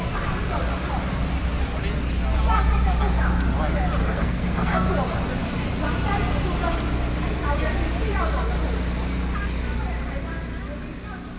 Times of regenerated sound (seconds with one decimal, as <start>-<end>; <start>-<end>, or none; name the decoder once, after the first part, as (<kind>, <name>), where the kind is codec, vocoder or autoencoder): 4.0-4.9 (codec, SNAC)